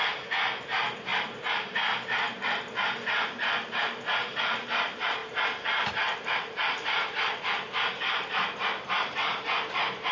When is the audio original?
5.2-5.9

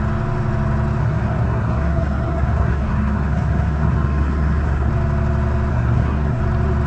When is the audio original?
0.0-1.0; 4.9-5.7; 6.4-6.9

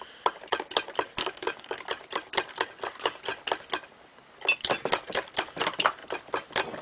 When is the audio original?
0.0-1.2; 1.8-6.8

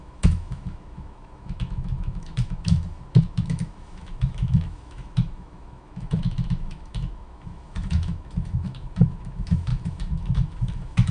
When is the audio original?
none

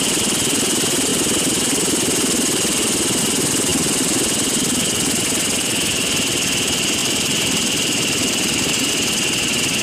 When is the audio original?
0.0-7.0; 8.9-9.8

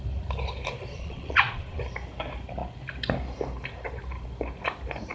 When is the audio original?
0.0-0.9; 1.8-5.1

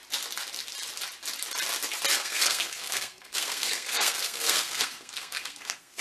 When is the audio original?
0.0-2.2